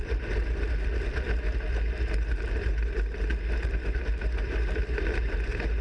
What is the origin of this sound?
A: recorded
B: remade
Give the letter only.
A